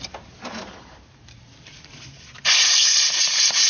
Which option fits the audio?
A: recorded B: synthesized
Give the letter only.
B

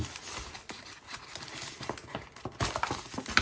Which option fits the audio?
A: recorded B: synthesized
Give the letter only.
A